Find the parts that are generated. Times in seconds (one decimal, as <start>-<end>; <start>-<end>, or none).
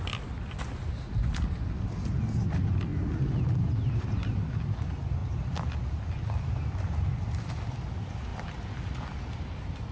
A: none